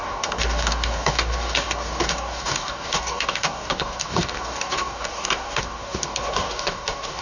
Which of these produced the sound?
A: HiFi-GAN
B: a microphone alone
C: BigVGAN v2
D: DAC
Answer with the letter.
D